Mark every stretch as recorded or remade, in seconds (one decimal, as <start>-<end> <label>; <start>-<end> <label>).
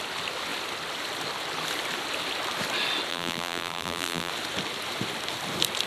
0.0-3.1 recorded; 3.1-4.3 remade; 4.3-5.9 recorded